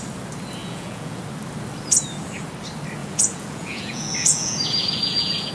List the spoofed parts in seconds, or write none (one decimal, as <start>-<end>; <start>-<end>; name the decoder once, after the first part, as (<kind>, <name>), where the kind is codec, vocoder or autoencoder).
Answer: 0.6-1.2 (vocoder, Vocos); 3.0-5.5